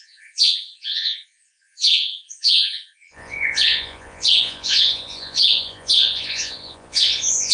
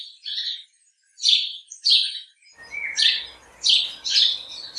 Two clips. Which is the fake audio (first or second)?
first